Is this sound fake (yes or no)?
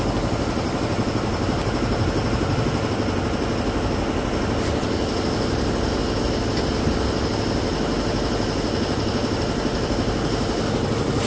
no